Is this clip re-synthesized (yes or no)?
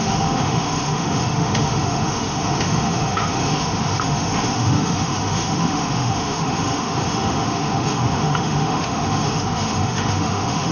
yes